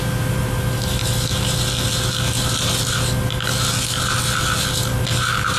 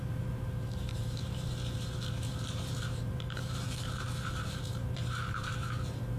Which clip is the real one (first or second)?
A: first